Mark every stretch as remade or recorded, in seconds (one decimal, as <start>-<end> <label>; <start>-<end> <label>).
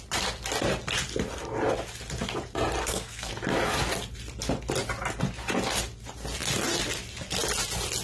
0.0-2.8 recorded; 2.8-3.3 remade; 3.3-8.0 recorded